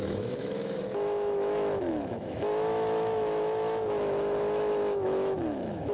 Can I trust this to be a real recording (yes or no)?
no